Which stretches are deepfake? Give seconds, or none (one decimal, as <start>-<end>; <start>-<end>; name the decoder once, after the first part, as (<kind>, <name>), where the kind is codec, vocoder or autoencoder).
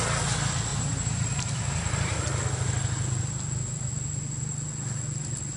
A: 0.7-1.6 (vocoder, BigVGAN v2)